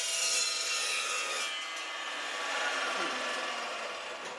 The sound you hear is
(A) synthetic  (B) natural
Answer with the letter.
B